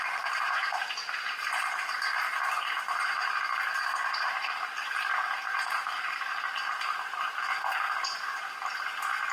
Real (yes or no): no